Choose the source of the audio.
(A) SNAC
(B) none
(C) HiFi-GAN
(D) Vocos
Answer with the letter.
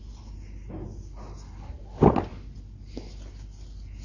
B